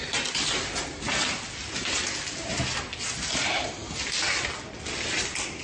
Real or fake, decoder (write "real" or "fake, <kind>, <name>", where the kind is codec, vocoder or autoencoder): real